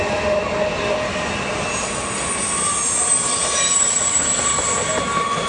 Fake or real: real